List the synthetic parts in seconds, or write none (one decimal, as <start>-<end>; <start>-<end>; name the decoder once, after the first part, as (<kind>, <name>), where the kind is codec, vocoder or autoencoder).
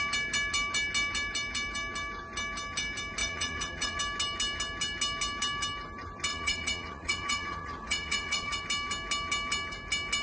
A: 3.2-4.0 (vocoder, Vocos); 6.3-8.6